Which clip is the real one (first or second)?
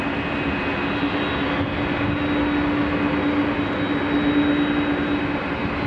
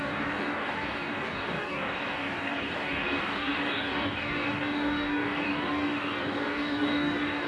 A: first